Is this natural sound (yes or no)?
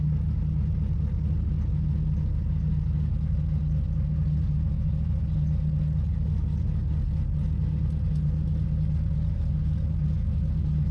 yes